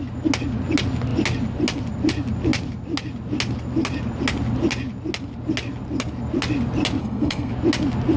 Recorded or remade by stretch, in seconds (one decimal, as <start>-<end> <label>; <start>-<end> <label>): 0.0-7.0 recorded; 7.0-7.5 remade; 7.5-8.2 recorded